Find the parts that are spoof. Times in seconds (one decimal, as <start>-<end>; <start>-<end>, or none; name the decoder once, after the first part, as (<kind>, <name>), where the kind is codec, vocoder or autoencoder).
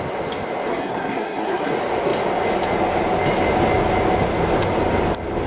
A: 0.7-1.7 (codec, SNAC)